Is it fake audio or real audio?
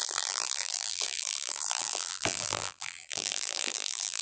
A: fake